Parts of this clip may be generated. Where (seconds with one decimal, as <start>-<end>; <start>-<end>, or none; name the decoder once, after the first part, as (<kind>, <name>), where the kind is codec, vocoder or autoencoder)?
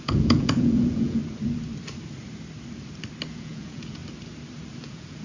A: 0.0-1.2 (vocoder, Vocos); 3.3-4.0; 4.8-5.2